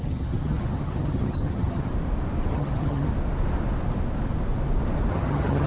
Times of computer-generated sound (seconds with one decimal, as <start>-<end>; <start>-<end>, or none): 0.0-1.9; 2.5-3.1; 5.1-5.7